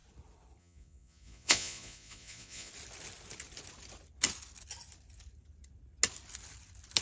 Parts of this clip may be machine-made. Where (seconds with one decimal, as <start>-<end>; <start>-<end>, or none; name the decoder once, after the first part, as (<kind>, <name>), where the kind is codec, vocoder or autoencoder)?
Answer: 0.6-2.7 (vocoder, Vocos)